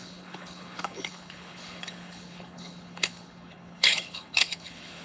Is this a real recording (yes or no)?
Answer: no